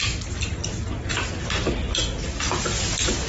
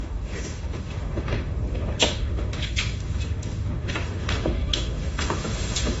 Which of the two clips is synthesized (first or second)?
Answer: second